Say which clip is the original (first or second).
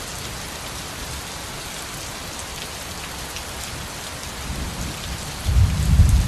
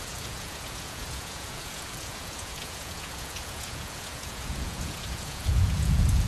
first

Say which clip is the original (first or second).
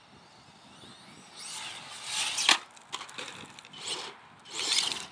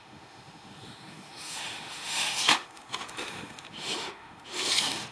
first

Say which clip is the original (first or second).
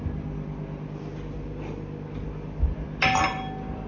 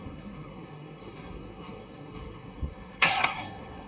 first